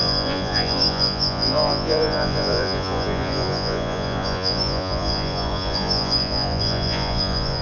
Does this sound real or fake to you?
fake